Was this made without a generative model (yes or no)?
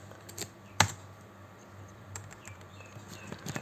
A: yes